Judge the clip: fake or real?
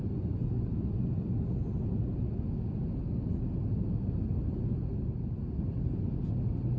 real